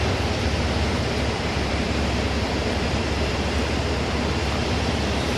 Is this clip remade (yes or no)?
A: yes